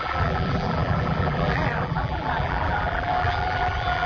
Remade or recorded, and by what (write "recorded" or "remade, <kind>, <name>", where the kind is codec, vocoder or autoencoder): remade, vocoder, BigVGAN v2